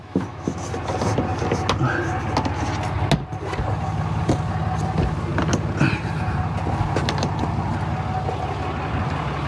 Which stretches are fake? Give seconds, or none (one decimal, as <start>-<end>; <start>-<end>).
0.0-0.6

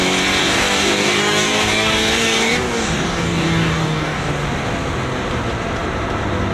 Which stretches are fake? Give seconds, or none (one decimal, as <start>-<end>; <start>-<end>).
0.4-4.3

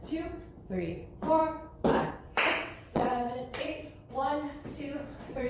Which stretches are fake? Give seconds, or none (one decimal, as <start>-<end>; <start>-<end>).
0.0-1.4; 2.1-5.5

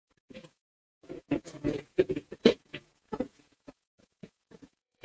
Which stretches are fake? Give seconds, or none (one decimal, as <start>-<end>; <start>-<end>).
0.0-5.0

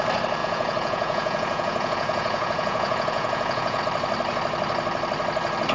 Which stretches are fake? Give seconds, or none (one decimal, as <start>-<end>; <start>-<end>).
0.4-3.8

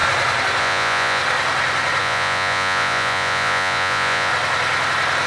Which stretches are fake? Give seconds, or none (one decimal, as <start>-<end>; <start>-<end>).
0.6-1.2; 2.0-4.3

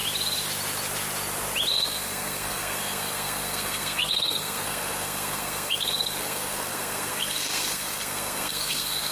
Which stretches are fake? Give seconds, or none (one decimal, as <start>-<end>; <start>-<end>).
1.7-9.1